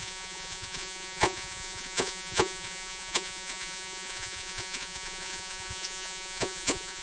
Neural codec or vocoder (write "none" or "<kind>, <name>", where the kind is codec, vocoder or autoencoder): vocoder, Vocos